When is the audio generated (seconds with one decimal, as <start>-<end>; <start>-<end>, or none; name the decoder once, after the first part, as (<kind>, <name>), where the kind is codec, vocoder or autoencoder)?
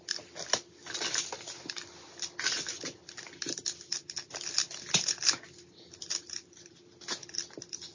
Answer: none